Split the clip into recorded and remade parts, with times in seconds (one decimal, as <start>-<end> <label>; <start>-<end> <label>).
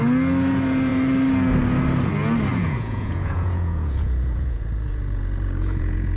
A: 0.0-2.6 recorded; 2.6-6.2 remade